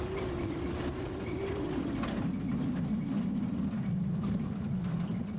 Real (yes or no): yes